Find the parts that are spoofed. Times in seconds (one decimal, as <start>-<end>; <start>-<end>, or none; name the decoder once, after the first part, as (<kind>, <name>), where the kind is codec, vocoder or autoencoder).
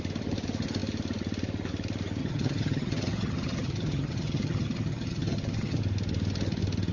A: 2.2-5.8 (vocoder, HiFi-GAN)